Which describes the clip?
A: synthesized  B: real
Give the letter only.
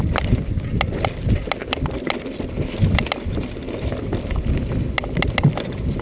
B